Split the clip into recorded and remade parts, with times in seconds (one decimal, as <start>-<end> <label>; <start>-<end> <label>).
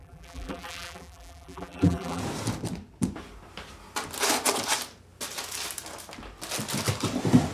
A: 0.0-2.2 remade; 2.2-7.5 recorded